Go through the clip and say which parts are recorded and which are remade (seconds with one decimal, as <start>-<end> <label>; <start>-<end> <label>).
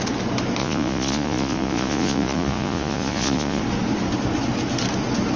0.0-0.6 recorded; 0.6-3.6 remade; 3.6-5.4 recorded